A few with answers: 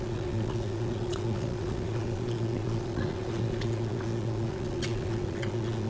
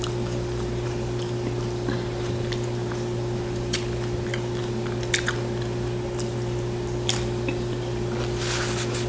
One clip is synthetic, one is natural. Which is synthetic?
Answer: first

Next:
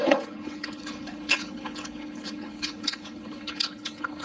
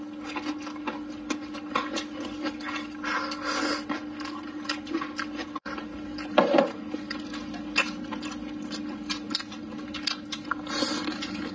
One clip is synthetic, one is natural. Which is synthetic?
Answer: first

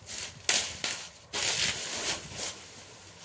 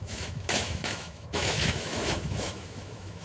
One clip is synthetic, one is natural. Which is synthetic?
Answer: second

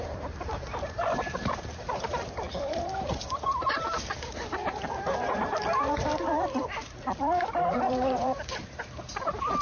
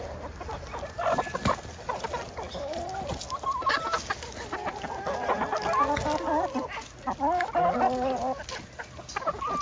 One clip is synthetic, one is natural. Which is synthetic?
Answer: first